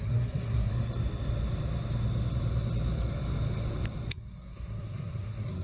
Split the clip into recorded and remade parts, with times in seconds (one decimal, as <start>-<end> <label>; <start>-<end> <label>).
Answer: 0.0-0.7 remade; 0.7-4.1 recorded; 4.1-5.6 remade